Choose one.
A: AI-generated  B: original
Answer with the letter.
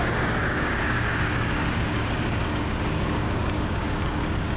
A